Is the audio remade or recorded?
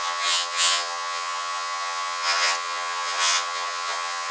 remade